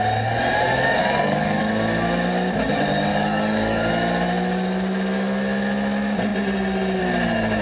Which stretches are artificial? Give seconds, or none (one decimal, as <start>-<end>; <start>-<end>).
1.0-1.6; 3.1-3.9